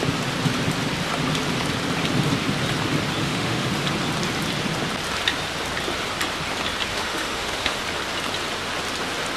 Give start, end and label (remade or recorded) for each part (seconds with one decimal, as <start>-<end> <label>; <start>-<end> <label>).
0.0-3.2 recorded; 3.2-3.7 remade; 3.7-6.9 recorded; 6.9-7.8 remade; 7.8-9.4 recorded

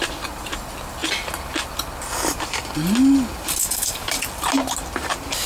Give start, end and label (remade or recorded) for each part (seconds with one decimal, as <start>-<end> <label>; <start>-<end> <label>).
0.0-3.6 recorded; 3.6-4.1 remade; 4.1-5.5 recorded

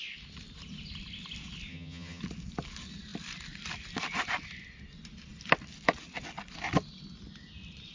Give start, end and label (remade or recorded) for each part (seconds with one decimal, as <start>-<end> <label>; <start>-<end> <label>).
0.0-1.7 recorded; 1.7-2.2 remade; 2.2-7.9 recorded

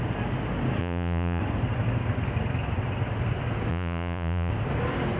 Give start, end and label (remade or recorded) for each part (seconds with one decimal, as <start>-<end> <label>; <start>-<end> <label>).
0.0-0.8 recorded; 0.8-1.4 remade; 1.4-3.7 recorded; 3.7-4.5 remade; 4.5-5.2 recorded

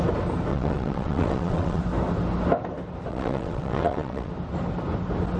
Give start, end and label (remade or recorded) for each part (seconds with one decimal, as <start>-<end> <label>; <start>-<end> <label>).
0.0-0.5 recorded; 0.5-1.8 remade; 1.8-3.1 recorded; 3.1-4.3 remade; 4.3-5.4 recorded